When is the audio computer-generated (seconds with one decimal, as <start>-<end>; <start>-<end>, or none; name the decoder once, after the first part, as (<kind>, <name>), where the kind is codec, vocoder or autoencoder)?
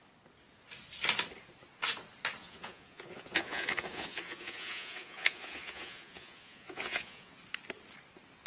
2.4-7.4 (vocoder, Vocos)